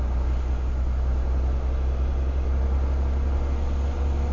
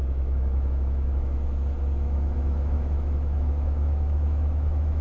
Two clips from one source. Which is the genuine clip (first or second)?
first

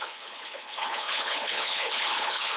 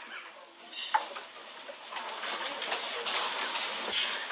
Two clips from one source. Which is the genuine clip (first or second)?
second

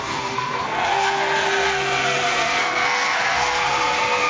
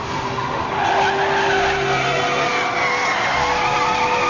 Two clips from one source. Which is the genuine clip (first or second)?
second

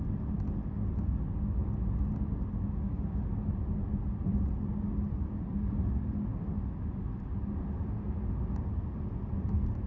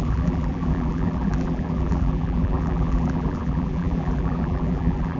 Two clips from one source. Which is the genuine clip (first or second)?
first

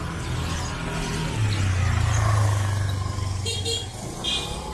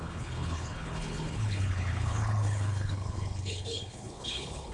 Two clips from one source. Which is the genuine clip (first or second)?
first